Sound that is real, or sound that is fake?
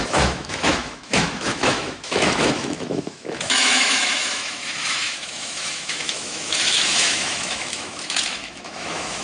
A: fake